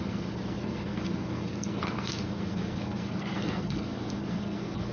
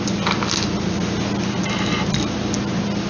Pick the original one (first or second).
second